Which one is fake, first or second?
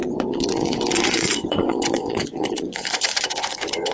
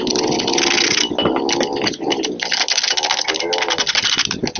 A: first